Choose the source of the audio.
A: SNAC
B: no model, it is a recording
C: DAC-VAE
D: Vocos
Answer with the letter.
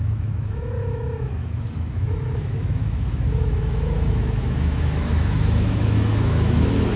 C